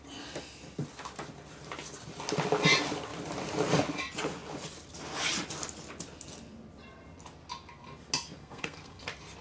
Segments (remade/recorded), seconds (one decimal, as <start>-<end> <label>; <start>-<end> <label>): 0.0-8.4 recorded; 8.4-9.0 remade; 9.0-9.4 recorded